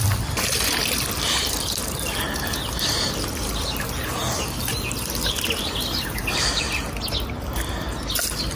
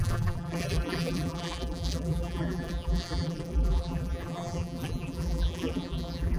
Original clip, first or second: first